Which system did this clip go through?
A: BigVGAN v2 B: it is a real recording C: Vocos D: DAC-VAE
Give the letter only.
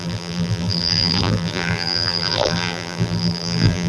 A